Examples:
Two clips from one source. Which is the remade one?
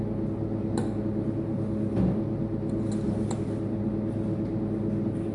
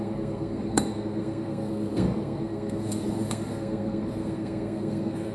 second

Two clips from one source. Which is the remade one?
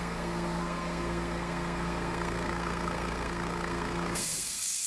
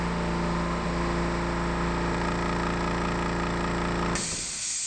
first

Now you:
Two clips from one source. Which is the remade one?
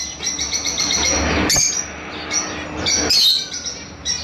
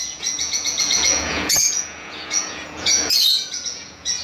second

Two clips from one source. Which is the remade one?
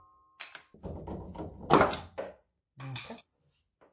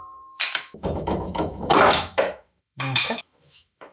second